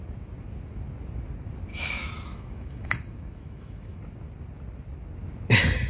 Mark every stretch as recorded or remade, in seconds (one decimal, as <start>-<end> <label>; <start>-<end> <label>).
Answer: 0.0-1.7 recorded; 1.7-4.0 remade; 4.0-5.9 recorded

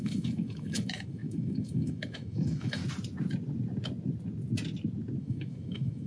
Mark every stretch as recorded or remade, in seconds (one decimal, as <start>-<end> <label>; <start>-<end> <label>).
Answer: 0.0-2.8 remade; 2.8-5.2 recorded; 5.2-6.1 remade

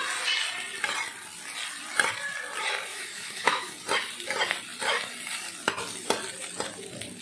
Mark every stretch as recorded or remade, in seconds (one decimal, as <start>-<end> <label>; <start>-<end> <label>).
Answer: 0.0-2.9 recorded; 2.9-3.7 remade; 3.7-7.2 recorded

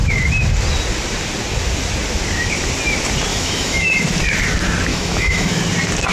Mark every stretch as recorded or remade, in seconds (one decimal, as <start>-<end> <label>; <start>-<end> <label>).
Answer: 0.0-3.3 recorded; 3.3-4.0 remade; 4.0-4.9 recorded; 4.9-5.6 remade; 5.6-6.1 recorded